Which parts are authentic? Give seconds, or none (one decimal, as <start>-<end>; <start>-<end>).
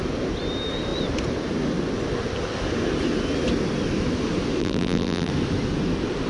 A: 0.0-4.6; 5.3-6.3